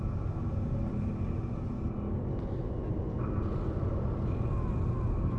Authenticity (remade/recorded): recorded